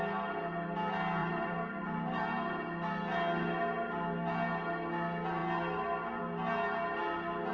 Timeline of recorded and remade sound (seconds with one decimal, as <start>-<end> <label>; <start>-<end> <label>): 0.0-1.2 recorded; 1.2-2.3 remade; 2.3-7.5 recorded